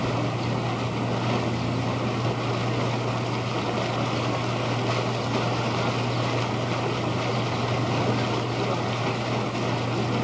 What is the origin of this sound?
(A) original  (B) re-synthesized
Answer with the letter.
A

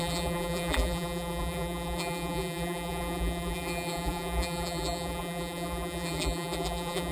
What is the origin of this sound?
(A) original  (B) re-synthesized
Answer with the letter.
B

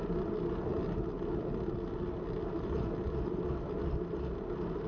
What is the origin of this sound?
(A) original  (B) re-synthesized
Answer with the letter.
A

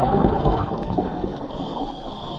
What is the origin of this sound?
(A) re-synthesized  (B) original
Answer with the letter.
A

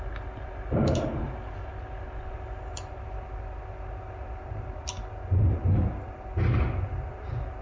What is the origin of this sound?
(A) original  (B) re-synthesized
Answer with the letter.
A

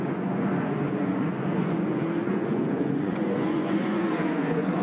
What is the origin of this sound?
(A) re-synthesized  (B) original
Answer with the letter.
A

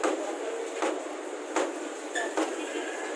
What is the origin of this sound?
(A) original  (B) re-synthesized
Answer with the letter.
A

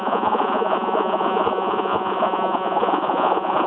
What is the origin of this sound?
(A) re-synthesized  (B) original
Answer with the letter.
A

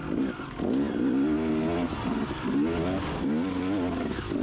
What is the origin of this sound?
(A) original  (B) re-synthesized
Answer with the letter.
A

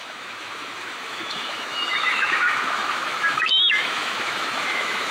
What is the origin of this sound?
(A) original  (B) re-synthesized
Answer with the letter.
B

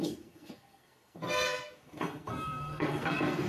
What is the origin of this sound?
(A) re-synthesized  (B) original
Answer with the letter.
A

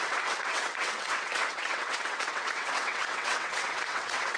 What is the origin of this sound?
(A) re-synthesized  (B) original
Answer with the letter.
A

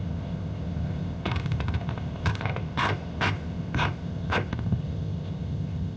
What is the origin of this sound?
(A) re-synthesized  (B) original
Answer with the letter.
A